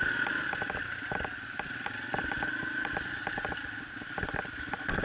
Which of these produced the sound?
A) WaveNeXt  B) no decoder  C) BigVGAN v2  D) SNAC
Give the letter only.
B